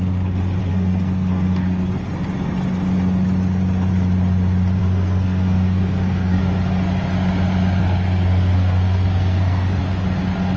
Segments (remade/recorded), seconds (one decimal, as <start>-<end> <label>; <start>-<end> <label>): 0.0-0.6 recorded; 0.6-2.0 remade; 2.0-4.8 recorded; 4.8-6.4 remade; 6.4-7.8 recorded; 7.8-9.8 remade; 9.8-10.6 recorded